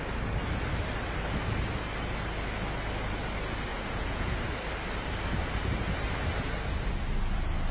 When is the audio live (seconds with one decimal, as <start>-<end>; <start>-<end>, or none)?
0.0-3.7; 4.4-7.7